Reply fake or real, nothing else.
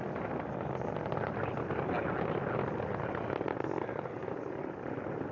real